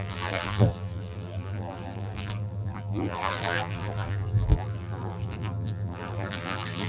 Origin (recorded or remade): remade